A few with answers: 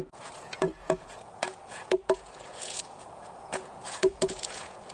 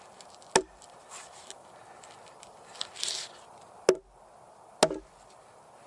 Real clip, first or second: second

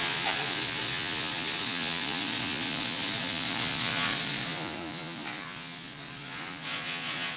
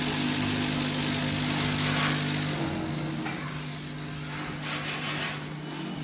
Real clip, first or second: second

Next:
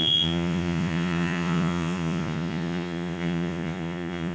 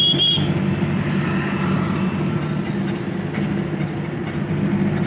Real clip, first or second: second